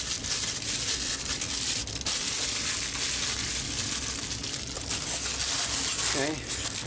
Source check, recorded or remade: recorded